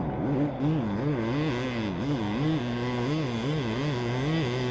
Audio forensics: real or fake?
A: real